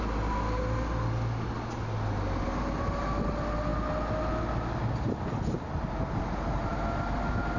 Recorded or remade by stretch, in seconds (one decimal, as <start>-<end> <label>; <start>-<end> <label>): 0.0-7.6 recorded